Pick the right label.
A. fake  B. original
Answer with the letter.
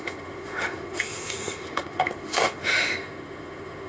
A